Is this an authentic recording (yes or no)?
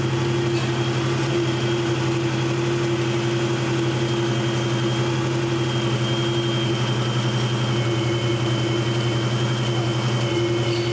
yes